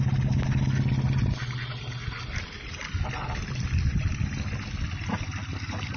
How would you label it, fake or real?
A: real